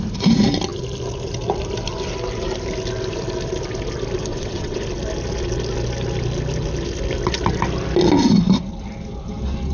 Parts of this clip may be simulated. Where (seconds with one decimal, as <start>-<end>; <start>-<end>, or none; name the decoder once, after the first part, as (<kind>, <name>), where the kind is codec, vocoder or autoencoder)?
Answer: 4.3-4.8 (vocoder, WaveNeXt)